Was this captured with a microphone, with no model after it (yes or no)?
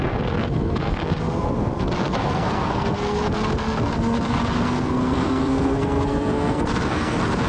no